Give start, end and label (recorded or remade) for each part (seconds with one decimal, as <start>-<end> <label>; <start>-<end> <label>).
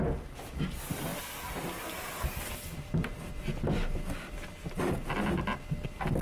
0.0-6.2 recorded